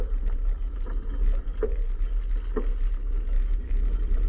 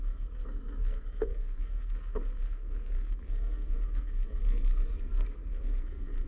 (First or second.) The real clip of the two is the first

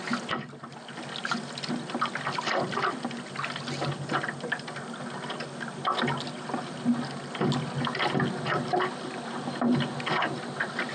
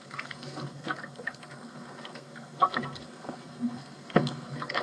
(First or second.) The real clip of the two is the first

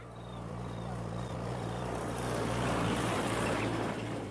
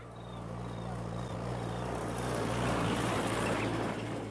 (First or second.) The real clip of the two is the second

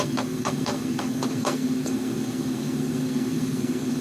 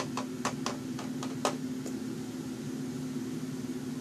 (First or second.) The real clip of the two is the second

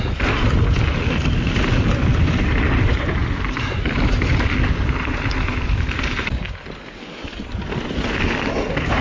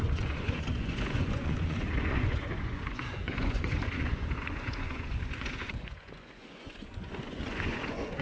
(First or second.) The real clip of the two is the first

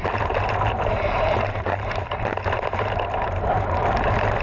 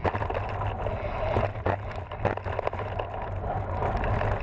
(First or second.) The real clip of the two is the second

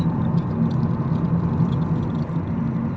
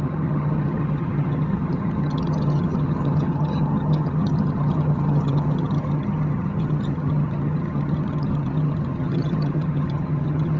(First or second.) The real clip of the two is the first